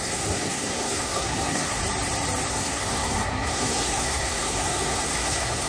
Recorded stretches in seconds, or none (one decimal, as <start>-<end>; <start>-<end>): 1.8-2.5